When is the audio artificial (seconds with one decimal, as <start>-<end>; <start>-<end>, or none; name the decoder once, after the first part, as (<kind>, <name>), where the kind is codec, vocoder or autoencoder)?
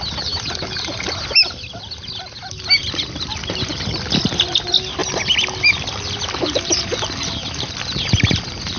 2.8-4.6 (vocoder, BigVGAN v2); 5.0-8.8